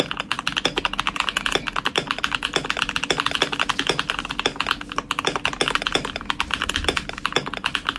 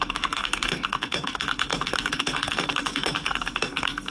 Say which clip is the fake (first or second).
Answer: second